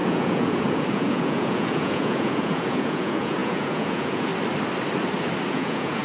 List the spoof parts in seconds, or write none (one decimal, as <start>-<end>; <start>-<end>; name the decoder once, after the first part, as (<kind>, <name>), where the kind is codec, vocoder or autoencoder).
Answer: 0.0-4.3 (vocoder, Vocos); 5.5-6.0